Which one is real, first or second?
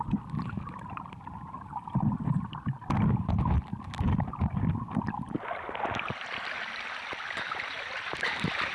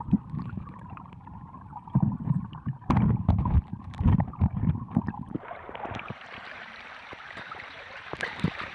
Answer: first